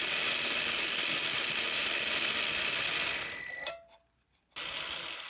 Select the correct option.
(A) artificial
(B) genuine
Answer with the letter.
B